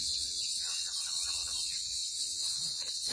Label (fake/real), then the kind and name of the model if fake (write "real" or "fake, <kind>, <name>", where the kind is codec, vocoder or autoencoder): fake, vocoder, Vocos